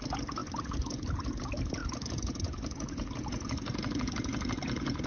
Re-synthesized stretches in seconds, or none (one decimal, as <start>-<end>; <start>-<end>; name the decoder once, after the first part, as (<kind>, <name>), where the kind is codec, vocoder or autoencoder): none